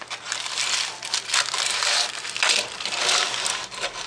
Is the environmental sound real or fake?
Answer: real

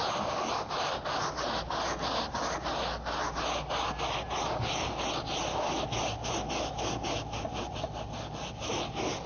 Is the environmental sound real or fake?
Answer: real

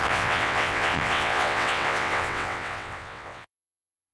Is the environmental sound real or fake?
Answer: fake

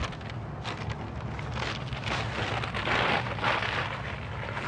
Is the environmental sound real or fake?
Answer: real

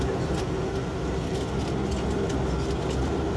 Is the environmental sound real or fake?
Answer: real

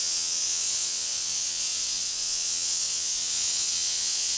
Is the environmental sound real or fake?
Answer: fake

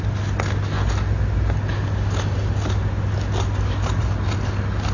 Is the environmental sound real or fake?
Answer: real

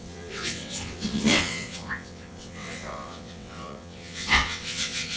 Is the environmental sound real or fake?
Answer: fake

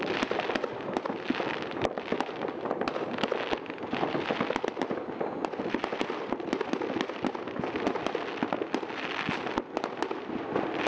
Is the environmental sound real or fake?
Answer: real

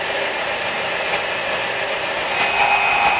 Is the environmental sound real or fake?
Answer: real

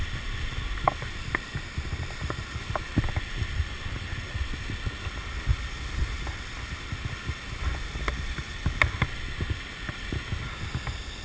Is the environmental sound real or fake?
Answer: real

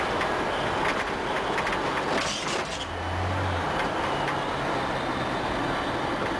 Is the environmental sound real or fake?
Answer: real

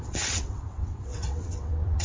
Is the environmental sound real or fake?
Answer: fake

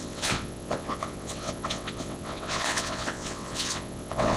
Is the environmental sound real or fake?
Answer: fake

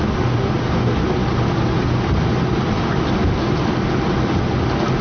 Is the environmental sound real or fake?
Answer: real